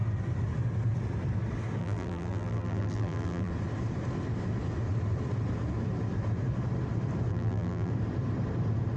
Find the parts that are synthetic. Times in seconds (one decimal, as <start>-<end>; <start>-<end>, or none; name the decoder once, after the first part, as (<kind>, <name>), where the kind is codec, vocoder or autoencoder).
1.8-3.5 (vocoder, BigVGAN v2); 7.3-7.9